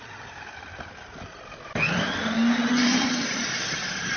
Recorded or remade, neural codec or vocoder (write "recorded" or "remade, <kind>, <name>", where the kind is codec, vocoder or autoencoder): recorded